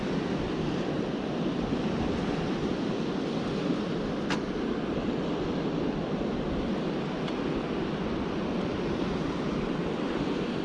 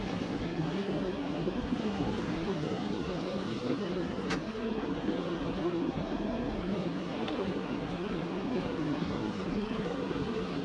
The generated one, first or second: second